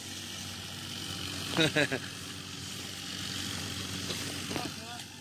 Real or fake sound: real